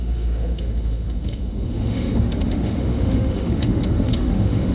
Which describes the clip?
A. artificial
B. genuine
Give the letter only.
A